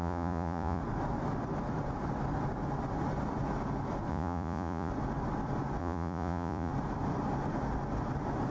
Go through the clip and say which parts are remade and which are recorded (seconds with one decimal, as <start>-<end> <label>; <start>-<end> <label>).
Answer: 0.0-0.8 remade; 0.8-4.1 recorded; 4.1-4.9 remade; 4.9-5.8 recorded; 5.8-6.7 remade; 6.7-8.5 recorded